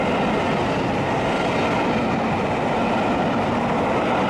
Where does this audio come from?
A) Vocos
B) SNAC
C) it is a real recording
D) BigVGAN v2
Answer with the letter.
C